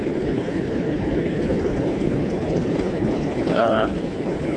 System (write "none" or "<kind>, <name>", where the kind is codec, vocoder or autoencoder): codec, HILCodec